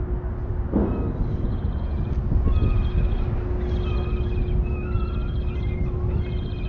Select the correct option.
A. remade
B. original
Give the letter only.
B